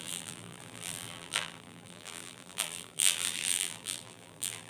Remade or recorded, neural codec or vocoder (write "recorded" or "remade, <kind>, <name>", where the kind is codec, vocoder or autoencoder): remade, vocoder, BigVGAN v2